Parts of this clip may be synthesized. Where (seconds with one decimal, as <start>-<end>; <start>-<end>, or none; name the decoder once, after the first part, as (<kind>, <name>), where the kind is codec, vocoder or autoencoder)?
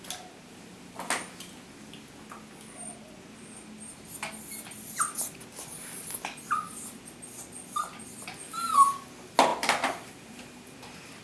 9.5-10.2 (vocoder, BigVGAN v2)